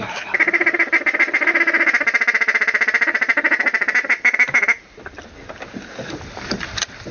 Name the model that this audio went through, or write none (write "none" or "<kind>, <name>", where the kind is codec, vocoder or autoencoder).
none